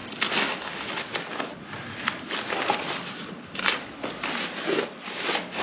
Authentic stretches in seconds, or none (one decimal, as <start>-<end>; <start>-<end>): 0.0-0.9; 1.5-4.9